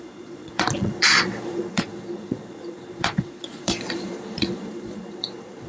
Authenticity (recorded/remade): remade